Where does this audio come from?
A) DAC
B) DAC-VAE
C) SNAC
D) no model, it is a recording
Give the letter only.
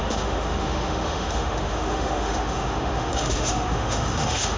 B